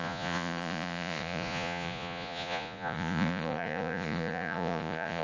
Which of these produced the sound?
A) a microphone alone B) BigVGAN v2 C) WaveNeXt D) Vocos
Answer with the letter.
D